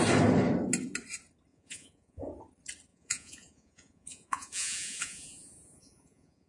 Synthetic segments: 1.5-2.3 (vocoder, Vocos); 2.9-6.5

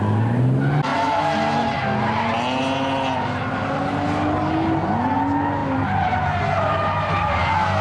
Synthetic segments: none

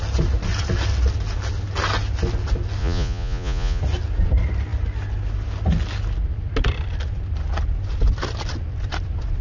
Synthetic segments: 2.8-3.8 (vocoder, Vocos)

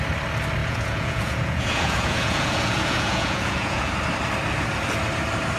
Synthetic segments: 0.6-3.9 (vocoder, Vocos)